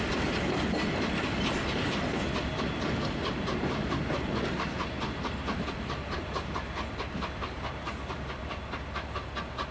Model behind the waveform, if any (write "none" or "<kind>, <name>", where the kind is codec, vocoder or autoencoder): none